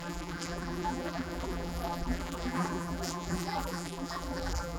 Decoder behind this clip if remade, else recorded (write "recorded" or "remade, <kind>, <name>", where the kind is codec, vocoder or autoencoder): remade, vocoder, BigVGAN v2